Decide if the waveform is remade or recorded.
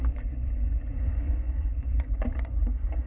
remade